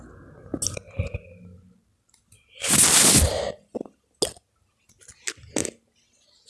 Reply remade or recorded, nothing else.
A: recorded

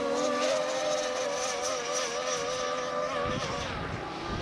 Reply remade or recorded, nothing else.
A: recorded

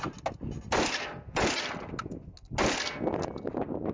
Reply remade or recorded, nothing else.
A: recorded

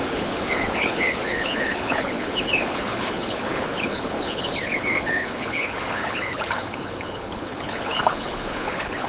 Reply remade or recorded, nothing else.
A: remade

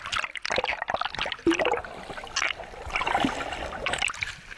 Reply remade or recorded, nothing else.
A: recorded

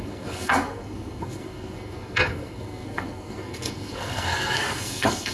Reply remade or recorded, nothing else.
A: remade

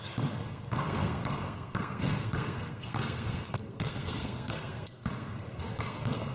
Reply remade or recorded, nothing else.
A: remade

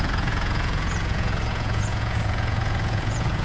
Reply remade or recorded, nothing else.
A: remade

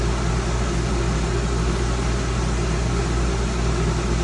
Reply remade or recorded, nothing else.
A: recorded